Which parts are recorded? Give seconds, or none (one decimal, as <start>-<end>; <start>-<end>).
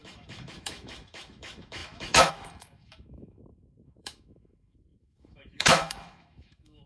none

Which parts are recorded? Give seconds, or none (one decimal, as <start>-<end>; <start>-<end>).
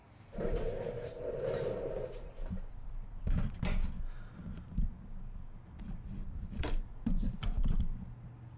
2.9-6.2; 7.6-8.6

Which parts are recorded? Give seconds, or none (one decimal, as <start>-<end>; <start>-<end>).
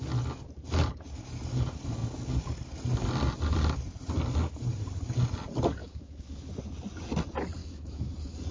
0.0-5.8; 6.5-7.6; 8.1-8.5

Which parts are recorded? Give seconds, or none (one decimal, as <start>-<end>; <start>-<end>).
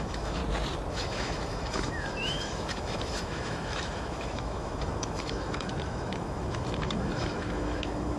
0.4-0.9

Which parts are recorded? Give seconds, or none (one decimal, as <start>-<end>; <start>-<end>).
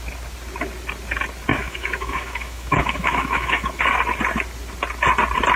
0.0-1.5; 3.8-5.6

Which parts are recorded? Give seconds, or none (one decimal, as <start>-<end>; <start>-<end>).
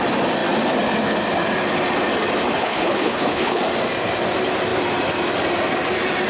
0.0-2.6; 3.6-6.3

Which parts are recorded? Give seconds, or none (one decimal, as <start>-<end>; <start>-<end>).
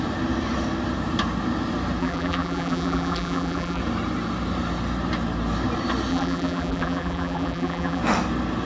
0.0-2.0; 3.8-6.1; 8.0-8.6